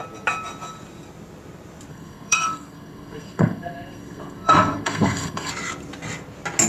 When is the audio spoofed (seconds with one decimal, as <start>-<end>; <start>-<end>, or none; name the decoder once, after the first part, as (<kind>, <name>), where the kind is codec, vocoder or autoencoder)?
1.9-5.5 (codec, SNAC)